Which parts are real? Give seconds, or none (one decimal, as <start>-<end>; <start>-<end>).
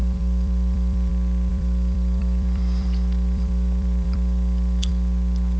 1.1-1.5; 4.9-5.6